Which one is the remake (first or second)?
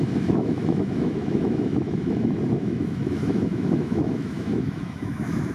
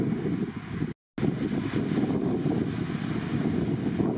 first